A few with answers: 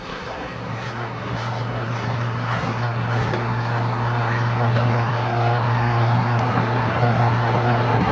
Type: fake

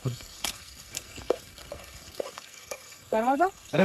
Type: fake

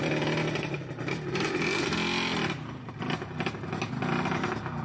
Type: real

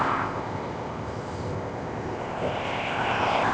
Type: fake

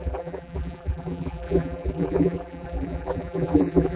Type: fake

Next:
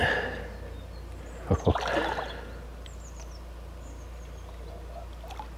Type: real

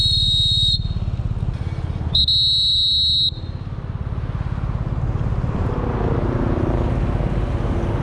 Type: real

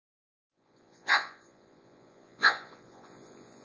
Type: fake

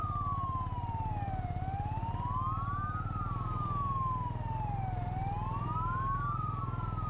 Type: real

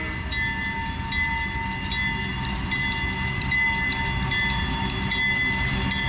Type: real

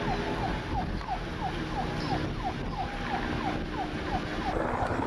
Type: real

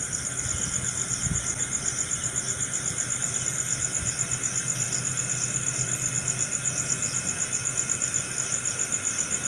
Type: real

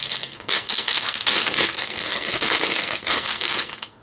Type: fake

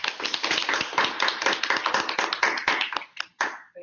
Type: real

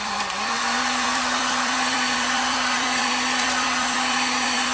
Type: fake